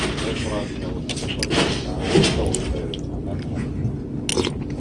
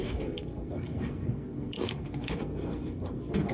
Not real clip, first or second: second